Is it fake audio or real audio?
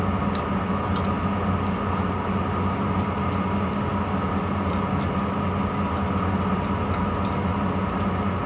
real